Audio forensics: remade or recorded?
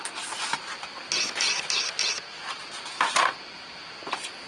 recorded